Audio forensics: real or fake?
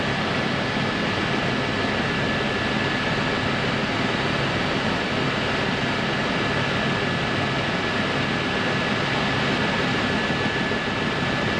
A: real